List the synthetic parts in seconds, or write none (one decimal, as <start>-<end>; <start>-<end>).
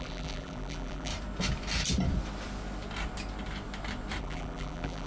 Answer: 0.0-1.1; 4.2-5.1